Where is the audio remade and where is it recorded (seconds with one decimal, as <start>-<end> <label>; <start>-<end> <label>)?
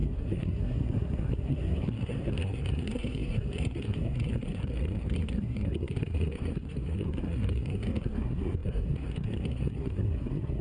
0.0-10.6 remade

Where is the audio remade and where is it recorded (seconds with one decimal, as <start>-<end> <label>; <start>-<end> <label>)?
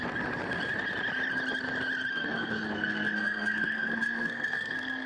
0.0-2.1 recorded; 2.1-5.1 remade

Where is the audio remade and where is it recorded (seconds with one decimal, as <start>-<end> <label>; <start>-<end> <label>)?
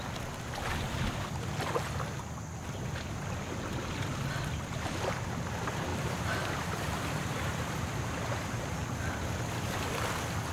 0.0-5.9 recorded; 5.9-8.7 remade; 8.7-10.5 recorded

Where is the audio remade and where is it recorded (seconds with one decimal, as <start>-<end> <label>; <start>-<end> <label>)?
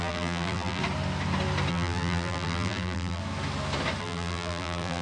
0.0-0.8 remade; 0.8-1.7 recorded; 1.7-3.2 remade; 3.2-4.0 recorded; 4.0-5.0 remade